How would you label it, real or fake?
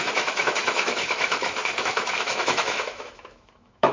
fake